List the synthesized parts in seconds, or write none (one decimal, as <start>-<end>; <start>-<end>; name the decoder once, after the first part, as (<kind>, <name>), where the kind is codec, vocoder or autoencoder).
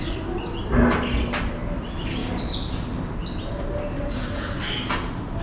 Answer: 2.2-3.0 (vocoder, BigVGAN v2)